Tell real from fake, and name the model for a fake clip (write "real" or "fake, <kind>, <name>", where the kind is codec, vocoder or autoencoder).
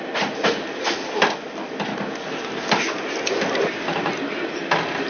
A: real